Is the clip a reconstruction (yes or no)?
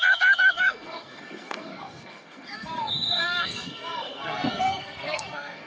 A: yes